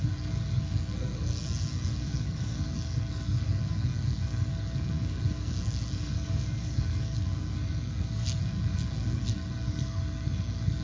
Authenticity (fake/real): fake